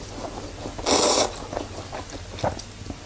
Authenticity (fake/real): real